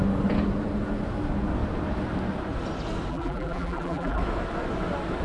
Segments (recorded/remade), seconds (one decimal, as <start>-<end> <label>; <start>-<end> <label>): 0.0-3.1 recorded; 3.1-4.2 remade; 4.2-5.2 recorded